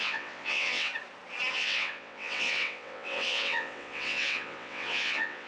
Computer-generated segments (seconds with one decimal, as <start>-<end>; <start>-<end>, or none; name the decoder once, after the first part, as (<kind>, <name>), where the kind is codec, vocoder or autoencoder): 0.0-0.9 (vocoder, WaveNeXt); 1.5-5.5